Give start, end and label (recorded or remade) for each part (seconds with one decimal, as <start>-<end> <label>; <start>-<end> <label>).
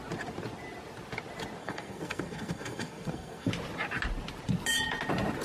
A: 0.0-1.6 recorded; 1.6-3.5 remade; 3.5-5.4 recorded